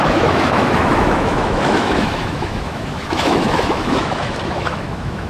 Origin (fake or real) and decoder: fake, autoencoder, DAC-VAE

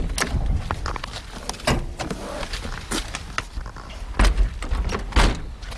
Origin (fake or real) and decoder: real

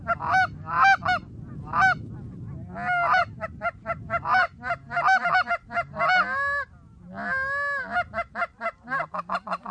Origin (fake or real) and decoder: real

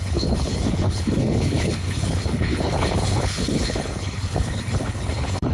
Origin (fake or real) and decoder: fake, codec, HILCodec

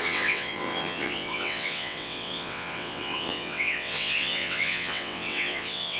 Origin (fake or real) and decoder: fake, vocoder, WaveNeXt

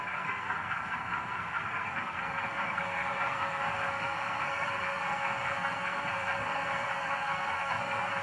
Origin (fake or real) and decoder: fake, codec, SNAC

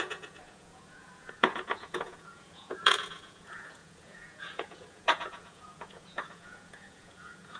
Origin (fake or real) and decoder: fake, vocoder, Vocos